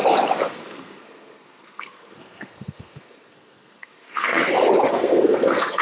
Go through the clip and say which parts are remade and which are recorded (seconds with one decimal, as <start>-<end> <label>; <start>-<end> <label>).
0.0-0.5 recorded; 0.5-4.4 remade; 4.4-4.9 recorded; 4.9-5.8 remade